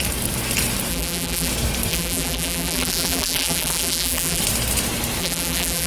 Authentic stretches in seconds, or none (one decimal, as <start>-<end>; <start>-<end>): 0.0-0.9; 1.5-1.9; 4.4-5.2